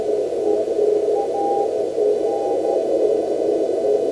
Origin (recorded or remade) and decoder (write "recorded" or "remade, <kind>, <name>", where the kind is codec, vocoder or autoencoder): recorded